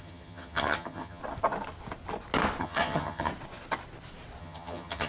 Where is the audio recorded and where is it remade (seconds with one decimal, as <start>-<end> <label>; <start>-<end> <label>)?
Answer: 0.0-1.2 remade; 1.2-2.6 recorded; 2.6-3.3 remade; 3.3-4.4 recorded; 4.4-5.1 remade